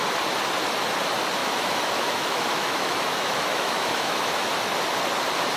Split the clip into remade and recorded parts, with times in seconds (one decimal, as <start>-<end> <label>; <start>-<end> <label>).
0.0-1.4 recorded; 1.4-4.5 remade; 4.5-5.6 recorded